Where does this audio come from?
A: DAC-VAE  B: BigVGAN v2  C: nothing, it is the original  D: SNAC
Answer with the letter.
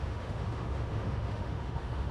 A